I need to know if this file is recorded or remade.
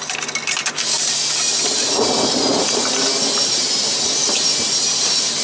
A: recorded